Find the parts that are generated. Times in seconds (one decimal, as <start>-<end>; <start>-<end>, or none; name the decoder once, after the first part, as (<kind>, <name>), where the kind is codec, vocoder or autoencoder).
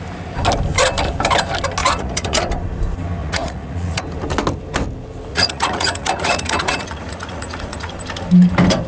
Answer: 1.8-2.4 (vocoder, Vocos); 3.2-4.0; 5.3-7.9